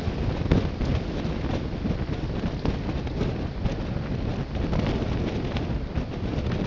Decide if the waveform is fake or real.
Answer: real